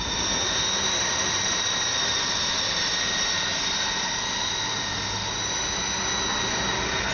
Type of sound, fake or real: real